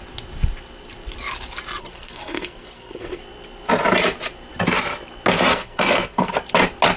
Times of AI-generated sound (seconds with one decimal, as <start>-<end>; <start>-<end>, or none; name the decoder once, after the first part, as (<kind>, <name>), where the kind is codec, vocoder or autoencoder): 1.8-3.2 (codec, SNAC); 5.5-6.3